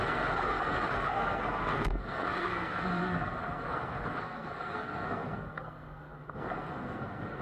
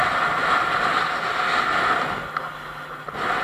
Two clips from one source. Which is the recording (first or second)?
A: second